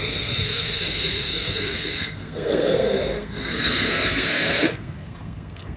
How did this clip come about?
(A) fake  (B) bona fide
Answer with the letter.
A